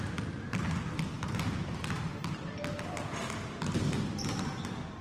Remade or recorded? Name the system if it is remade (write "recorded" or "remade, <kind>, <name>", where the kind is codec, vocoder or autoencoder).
recorded